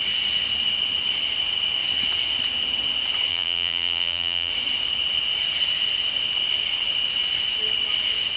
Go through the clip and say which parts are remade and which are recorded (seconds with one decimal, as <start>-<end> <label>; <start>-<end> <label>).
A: 0.0-3.3 recorded; 3.3-4.5 remade; 4.5-8.4 recorded